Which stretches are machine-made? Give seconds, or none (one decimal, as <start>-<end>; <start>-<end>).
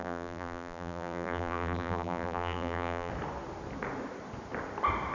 0.0-3.1